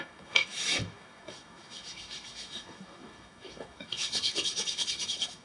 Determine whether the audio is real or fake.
fake